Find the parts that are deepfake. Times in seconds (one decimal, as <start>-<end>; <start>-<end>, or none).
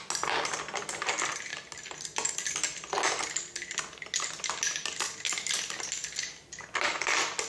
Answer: none